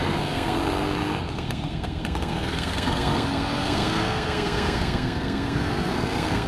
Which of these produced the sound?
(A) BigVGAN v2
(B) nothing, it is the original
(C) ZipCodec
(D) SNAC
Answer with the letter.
D